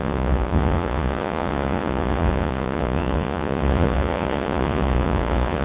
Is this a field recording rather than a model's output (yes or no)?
no